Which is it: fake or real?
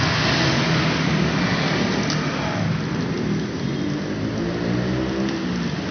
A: real